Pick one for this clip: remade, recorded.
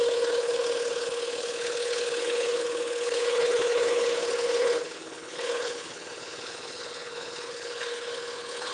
remade